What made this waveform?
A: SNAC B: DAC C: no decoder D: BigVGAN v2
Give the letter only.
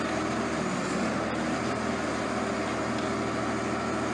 C